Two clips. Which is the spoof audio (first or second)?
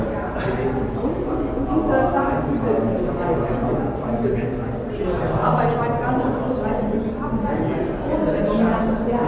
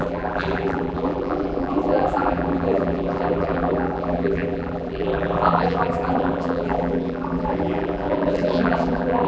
second